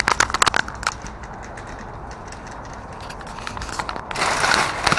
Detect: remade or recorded recorded